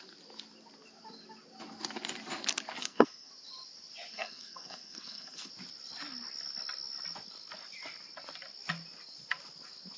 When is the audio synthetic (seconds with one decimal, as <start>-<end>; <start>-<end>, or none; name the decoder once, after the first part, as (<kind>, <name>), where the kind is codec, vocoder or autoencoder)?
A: 2.8-3.3 (codec, SNAC); 4.1-5.5